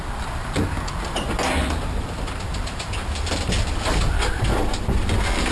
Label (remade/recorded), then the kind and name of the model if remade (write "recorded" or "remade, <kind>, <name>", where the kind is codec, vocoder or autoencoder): recorded